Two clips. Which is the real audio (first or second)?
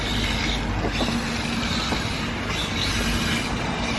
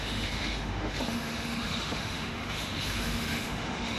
first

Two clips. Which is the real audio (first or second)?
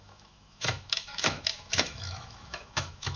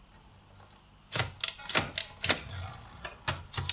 second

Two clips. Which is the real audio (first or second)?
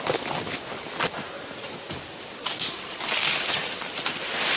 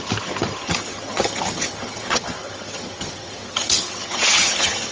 first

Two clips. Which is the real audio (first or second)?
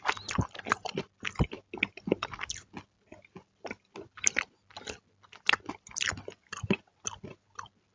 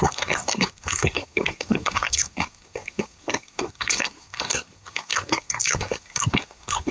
first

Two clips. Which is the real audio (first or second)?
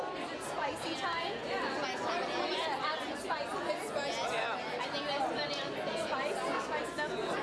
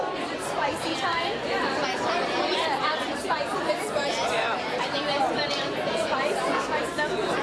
first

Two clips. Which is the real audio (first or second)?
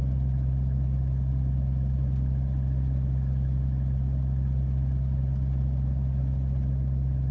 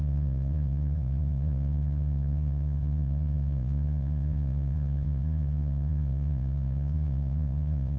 first